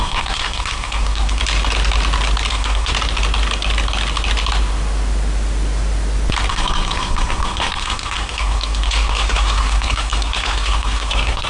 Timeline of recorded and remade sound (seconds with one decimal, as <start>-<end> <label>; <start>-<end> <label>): 0.0-1.4 remade; 1.4-2.5 recorded; 2.5-2.9 remade; 2.9-6.5 recorded; 6.5-11.5 remade